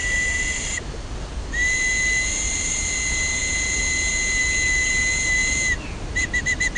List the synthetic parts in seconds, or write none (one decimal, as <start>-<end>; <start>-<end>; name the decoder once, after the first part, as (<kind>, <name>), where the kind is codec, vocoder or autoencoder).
none